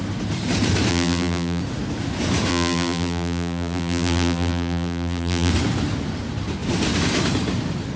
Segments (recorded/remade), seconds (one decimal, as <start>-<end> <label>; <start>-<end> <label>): 0.0-0.9 recorded; 0.9-1.6 remade; 1.6-2.5 recorded; 2.5-5.5 remade; 5.5-8.0 recorded